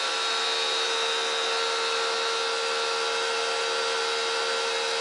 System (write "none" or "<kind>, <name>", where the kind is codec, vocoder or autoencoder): none